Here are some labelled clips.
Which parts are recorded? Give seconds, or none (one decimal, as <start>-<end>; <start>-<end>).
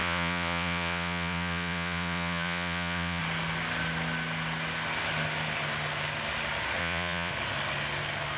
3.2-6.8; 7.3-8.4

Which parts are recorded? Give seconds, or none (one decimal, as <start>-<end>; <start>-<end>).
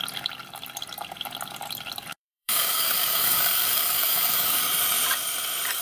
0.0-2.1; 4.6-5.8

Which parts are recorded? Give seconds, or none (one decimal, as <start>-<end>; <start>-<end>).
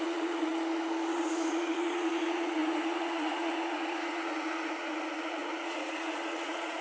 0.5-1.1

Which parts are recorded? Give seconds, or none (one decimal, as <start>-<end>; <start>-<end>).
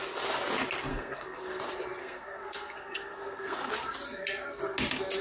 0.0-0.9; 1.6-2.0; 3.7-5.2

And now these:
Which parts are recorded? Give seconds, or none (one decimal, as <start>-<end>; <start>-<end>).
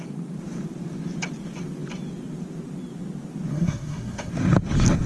0.0-3.5; 4.3-5.1